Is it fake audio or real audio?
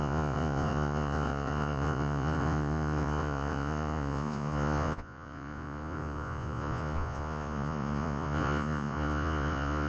fake